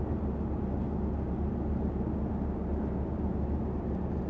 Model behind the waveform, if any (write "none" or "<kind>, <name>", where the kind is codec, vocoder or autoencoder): none